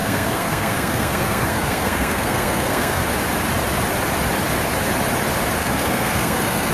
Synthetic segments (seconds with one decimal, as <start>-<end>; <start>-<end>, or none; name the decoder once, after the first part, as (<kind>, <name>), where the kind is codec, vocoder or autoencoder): 0.0-3.0 (codec, SNAC); 5.6-6.7